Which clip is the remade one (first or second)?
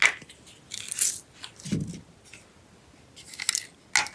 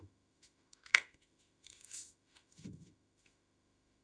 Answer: second